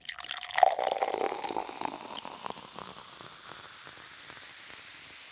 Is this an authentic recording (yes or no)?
yes